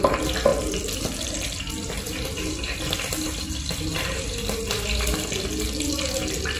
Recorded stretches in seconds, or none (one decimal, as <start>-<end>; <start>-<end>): 0.0-6.6